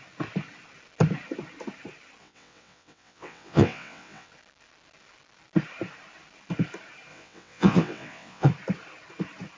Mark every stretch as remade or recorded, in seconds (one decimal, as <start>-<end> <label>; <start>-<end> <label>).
0.0-2.2 recorded; 2.2-4.3 remade; 4.3-7.1 recorded; 7.1-8.5 remade; 8.5-9.6 recorded